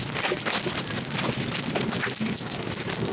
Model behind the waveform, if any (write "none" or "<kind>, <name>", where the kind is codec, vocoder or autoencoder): none